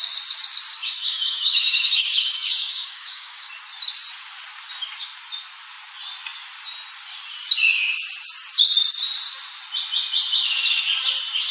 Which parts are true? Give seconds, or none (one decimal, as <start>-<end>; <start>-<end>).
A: 0.0-0.7; 3.5-11.5